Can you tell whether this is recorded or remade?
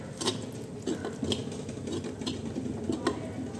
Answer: recorded